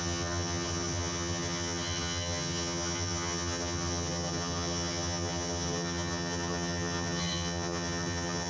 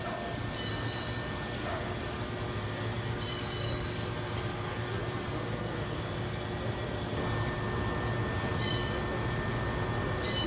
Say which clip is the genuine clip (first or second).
second